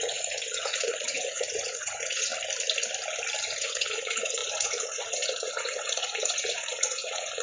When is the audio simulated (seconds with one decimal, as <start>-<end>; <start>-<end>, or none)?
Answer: 0.0-2.3; 3.4-7.4